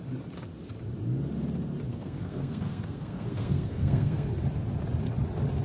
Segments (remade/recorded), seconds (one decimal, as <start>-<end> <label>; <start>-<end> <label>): 0.0-1.9 recorded; 1.9-4.3 remade; 4.3-5.6 recorded